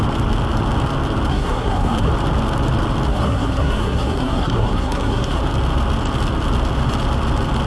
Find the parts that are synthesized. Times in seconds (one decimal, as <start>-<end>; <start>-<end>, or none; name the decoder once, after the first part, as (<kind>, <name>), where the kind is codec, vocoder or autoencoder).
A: 1.3-2.1 (codec, SNAC); 3.1-5.4